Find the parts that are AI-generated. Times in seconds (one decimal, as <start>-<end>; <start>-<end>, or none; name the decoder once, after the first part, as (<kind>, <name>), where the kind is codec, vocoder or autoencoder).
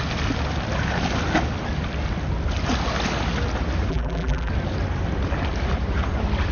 3.9-4.5 (vocoder, BigVGAN v2)